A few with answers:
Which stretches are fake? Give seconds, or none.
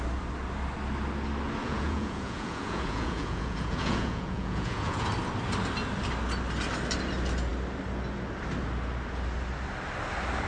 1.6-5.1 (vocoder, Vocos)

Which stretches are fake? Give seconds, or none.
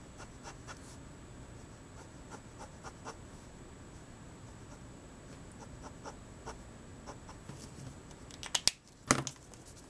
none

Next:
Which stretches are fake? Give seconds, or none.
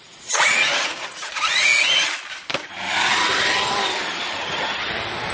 0.0-1.7 (vocoder, Vocos)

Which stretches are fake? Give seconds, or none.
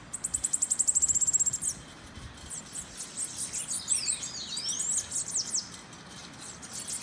none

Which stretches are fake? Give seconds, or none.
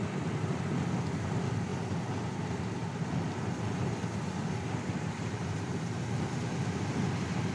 none